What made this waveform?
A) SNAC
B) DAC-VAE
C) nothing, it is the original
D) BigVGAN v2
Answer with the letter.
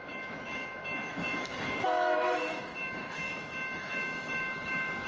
B